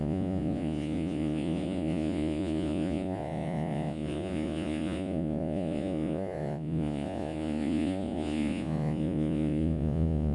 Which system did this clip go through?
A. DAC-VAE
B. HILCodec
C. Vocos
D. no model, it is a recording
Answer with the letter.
C